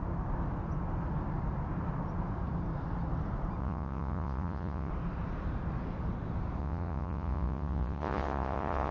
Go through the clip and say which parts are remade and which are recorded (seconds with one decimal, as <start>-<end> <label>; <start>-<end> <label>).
0.0-3.6 recorded; 3.6-4.9 remade; 4.9-6.6 recorded; 6.6-8.9 remade